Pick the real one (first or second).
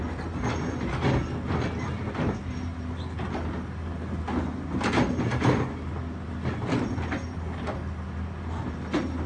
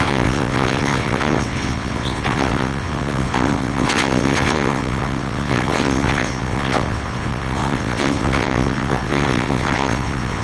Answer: first